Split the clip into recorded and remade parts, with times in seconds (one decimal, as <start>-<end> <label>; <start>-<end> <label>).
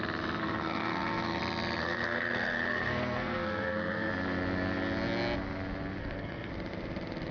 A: 0.0-0.4 recorded; 0.4-1.4 remade; 1.4-1.8 recorded; 1.8-4.1 remade; 4.1-6.0 recorded; 6.0-6.5 remade; 6.5-7.3 recorded